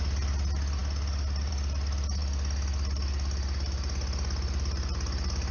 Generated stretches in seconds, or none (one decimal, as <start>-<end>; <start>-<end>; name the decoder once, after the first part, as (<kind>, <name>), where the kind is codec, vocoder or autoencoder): none